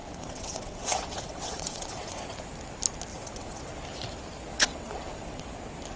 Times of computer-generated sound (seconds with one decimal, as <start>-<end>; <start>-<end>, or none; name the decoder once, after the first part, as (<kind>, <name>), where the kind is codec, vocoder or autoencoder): 0.0-2.2 (vocoder, WaveNeXt); 3.1-3.7; 4.5-5.5

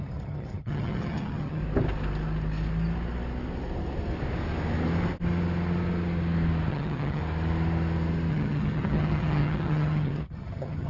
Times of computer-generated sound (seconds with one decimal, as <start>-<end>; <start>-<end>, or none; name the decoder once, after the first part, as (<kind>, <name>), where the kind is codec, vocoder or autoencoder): 0.0-1.6 (vocoder, HiFi-GAN); 6.7-7.2; 8.3-10.9

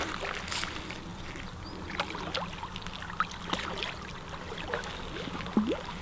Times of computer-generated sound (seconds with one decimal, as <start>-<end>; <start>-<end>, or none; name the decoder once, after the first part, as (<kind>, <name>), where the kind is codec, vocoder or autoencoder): none

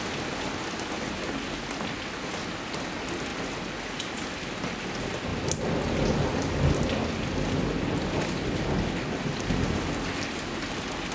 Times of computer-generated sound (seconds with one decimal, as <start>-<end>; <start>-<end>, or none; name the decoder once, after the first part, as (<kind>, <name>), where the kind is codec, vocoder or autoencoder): none

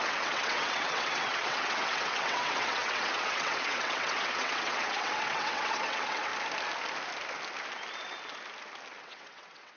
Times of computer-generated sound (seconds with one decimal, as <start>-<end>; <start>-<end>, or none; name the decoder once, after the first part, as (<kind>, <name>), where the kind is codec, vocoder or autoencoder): 0.0-6.3 (vocoder, WaveNeXt); 9.0-9.8

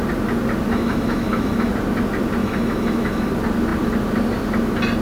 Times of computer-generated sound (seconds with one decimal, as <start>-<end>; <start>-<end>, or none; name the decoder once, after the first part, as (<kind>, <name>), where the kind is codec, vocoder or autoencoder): 0.7-1.7 (autoencoder, DAC-VAE); 2.4-3.3

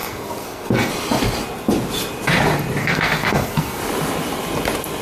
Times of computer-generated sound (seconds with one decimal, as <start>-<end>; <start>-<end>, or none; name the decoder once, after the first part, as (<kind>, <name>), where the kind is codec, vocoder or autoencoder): 0.0-0.9 (codec, SNAC); 2.8-3.8

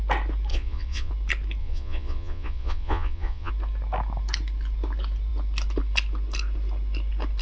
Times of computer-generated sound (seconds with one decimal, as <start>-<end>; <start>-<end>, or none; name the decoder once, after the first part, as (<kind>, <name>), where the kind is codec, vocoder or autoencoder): 0.5-1.1 (vocoder, Vocos); 1.6-3.5